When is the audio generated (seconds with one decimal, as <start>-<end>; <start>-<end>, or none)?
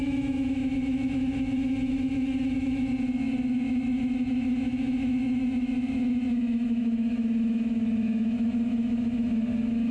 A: 0.0-9.9